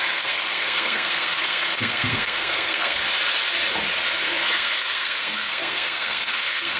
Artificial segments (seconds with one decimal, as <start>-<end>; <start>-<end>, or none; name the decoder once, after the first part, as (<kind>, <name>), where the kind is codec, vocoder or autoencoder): 0.0-3.0 (codec, SNAC); 4.2-6.8